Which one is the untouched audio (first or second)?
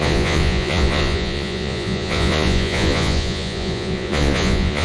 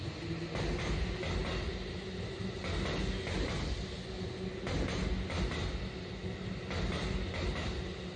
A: second